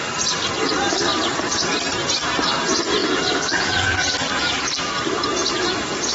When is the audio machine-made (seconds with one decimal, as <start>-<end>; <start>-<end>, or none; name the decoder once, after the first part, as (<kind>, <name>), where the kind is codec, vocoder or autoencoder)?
3.0-4.9 (vocoder, BigVGAN v2)